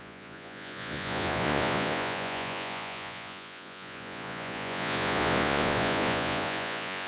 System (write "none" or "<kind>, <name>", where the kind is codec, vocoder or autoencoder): vocoder, Vocos